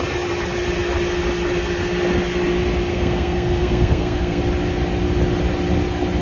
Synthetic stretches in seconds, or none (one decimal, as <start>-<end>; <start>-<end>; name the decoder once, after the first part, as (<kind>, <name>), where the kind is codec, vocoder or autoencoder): 2.9-4.4 (codec, SNAC)